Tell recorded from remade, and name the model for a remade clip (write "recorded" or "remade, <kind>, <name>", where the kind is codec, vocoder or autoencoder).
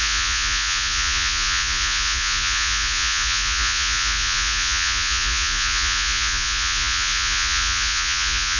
remade, vocoder, Vocos